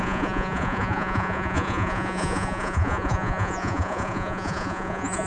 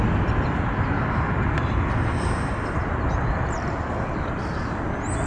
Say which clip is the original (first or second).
second